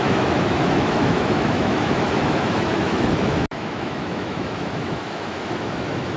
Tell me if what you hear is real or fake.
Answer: fake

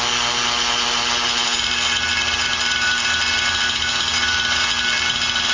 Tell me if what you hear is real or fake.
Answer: real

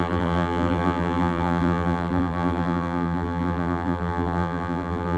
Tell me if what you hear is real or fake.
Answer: fake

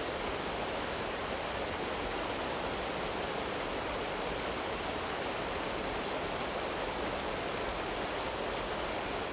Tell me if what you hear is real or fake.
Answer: real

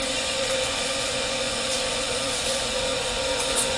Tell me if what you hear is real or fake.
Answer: fake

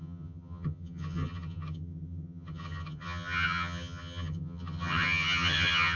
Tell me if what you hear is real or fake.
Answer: fake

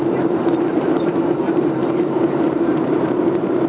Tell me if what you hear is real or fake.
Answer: fake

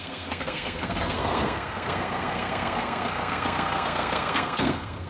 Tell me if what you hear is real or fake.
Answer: fake